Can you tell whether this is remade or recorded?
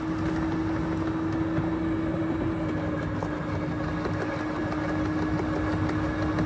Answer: recorded